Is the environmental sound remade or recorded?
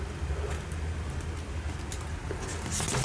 recorded